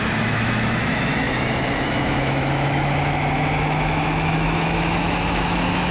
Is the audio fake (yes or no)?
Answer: yes